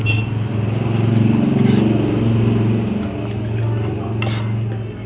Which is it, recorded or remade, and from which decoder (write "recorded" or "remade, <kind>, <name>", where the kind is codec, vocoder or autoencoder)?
recorded